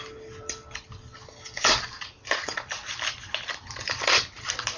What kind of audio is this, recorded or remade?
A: recorded